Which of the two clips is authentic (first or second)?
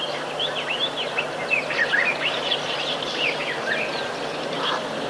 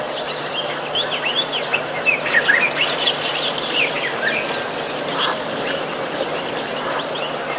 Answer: second